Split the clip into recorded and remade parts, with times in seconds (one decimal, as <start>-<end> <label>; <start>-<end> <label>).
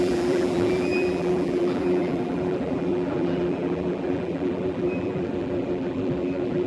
0.0-6.7 remade